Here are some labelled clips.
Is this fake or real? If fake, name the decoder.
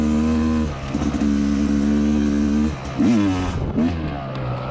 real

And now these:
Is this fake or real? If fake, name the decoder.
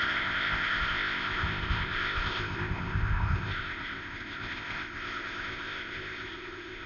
fake, codec, ZipCodec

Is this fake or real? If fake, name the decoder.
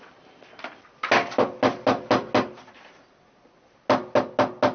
real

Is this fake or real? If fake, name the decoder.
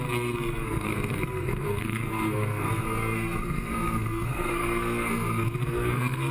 fake, codec, SNAC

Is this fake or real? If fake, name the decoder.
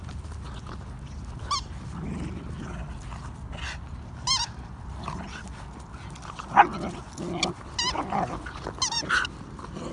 real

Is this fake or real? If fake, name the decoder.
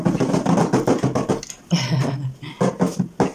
real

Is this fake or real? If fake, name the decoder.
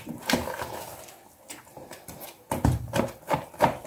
real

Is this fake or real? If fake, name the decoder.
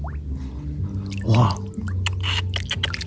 real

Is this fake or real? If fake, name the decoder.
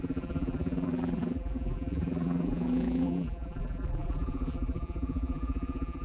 fake, vocoder, BigVGAN v2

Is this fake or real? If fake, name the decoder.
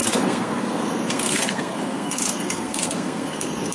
fake, codec, SNAC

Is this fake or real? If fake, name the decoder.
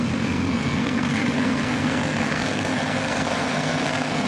fake, codec, SNAC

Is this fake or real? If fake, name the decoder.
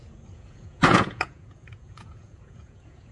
fake, vocoder, Vocos